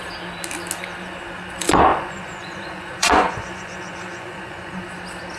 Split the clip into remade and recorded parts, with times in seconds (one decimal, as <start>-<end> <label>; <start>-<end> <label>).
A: 0.0-1.9 recorded; 1.9-5.0 remade; 5.0-5.4 recorded

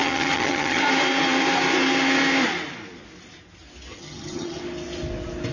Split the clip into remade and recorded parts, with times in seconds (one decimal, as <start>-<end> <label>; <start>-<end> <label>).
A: 0.0-0.8 remade; 0.8-3.9 recorded; 3.9-4.6 remade; 4.6-5.5 recorded

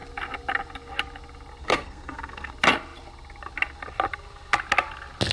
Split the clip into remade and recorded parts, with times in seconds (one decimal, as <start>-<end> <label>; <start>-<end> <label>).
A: 0.0-1.6 recorded; 1.6-2.5 remade; 2.5-5.3 recorded

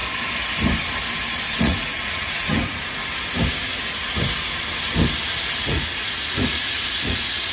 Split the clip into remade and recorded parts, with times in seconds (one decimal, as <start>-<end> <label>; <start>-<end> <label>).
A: 0.0-1.6 recorded; 1.6-3.0 remade; 3.0-5.6 recorded; 5.6-7.5 remade

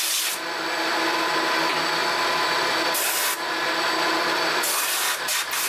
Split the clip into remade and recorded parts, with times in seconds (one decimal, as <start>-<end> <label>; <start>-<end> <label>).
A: 0.0-5.7 recorded

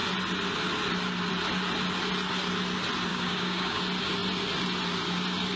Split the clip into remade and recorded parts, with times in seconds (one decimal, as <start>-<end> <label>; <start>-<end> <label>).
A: 0.0-3.1 recorded; 3.1-3.8 remade; 3.8-5.6 recorded